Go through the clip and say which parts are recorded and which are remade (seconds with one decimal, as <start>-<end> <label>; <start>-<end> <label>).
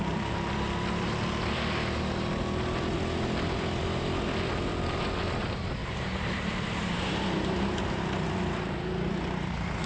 0.0-5.8 recorded; 5.8-7.8 remade; 7.8-9.9 recorded